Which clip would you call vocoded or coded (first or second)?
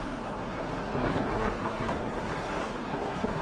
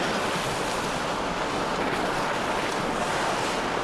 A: first